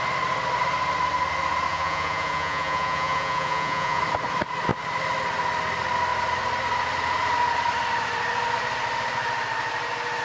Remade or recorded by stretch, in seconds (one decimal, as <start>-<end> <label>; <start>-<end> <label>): 0.0-1.7 recorded; 1.7-4.0 remade; 4.0-10.2 recorded